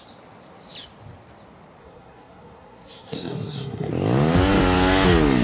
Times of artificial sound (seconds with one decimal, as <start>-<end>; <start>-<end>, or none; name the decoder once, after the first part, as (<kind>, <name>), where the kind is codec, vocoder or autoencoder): 1.8-3.9 (codec, SNAC)